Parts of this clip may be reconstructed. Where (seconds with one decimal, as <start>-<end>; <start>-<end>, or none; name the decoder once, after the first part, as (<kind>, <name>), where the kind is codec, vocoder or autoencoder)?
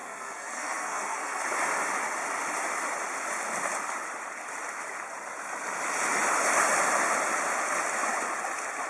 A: 0.0-1.4 (codec, SNAC)